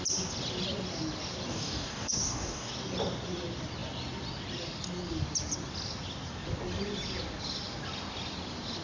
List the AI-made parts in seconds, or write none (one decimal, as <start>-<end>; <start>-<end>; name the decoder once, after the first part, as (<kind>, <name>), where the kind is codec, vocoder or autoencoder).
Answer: 1.5-2.7 (codec, DAC)